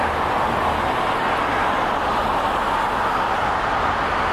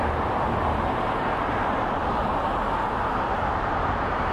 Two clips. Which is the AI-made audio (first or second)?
second